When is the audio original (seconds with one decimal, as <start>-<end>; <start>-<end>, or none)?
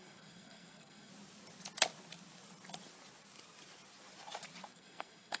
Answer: 1.1-4.7